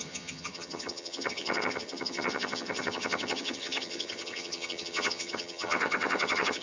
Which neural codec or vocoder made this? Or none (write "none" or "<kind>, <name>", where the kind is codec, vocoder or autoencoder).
vocoder, HiFi-GAN